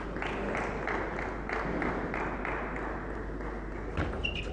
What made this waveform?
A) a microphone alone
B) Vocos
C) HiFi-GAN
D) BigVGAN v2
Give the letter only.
A